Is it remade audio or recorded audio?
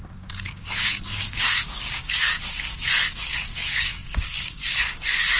remade